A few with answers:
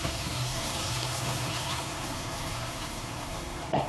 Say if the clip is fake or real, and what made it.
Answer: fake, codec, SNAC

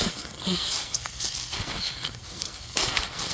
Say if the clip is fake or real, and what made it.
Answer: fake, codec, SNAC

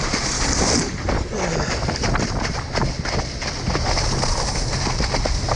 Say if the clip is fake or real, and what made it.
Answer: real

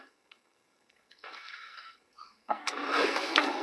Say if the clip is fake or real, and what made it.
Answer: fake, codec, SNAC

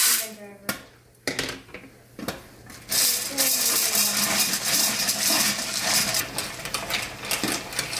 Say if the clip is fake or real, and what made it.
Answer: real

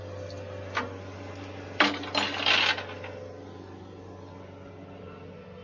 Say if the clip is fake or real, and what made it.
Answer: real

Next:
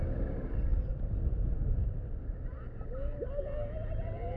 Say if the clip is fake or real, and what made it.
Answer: real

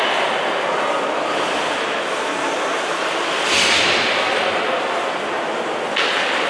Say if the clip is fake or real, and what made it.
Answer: real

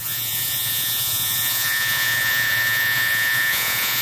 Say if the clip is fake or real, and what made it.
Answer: fake, vocoder, Vocos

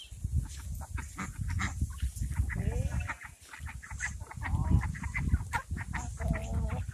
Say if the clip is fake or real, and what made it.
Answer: real